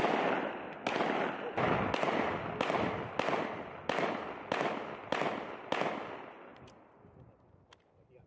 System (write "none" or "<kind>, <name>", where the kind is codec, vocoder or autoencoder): none